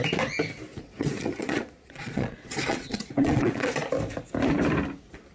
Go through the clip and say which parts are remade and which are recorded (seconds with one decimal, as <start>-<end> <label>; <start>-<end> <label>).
0.0-0.7 recorded; 0.7-3.9 remade; 3.9-5.3 recorded